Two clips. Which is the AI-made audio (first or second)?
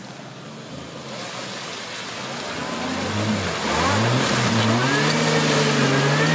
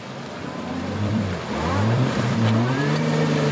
second